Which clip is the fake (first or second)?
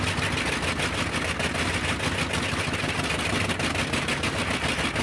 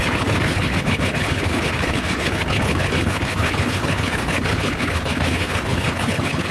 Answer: second